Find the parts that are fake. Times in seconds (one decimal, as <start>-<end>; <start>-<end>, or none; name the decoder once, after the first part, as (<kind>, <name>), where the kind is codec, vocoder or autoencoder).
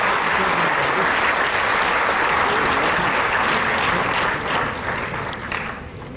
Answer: none